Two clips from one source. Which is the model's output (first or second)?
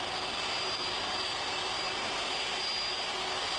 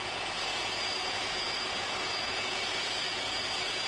second